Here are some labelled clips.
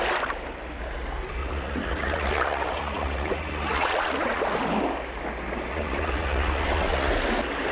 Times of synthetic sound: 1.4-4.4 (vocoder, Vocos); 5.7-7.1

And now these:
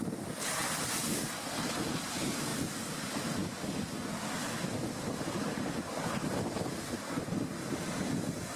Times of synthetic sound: 2.5-3.4 (vocoder, BigVGAN v2); 4.7-5.9

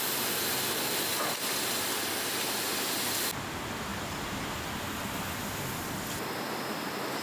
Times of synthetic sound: none

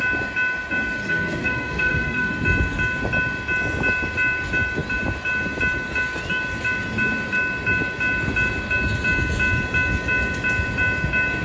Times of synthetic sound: 1.0-2.3 (codec, SNAC)

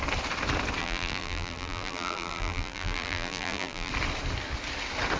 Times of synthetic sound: 0.8-3.9 (vocoder, BigVGAN v2)

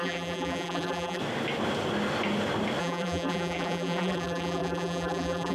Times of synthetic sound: 0.0-1.2 (vocoder, BigVGAN v2); 2.8-5.5

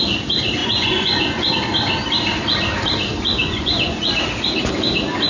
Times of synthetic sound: 0.6-1.5 (vocoder, Vocos); 3.4-4.1